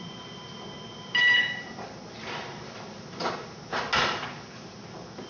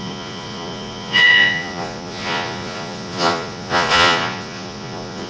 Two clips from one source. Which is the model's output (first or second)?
second